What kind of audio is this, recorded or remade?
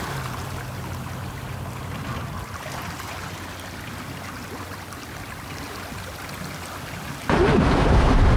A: recorded